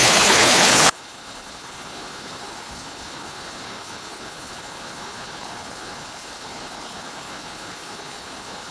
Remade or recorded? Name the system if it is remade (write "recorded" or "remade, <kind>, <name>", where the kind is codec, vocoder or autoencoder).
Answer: remade, codec, HILCodec